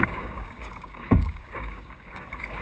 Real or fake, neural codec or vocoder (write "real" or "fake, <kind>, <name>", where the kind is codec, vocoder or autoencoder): fake, codec, DAC